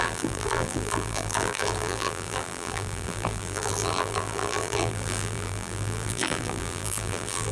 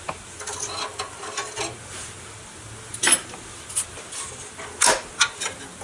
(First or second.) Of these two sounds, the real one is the second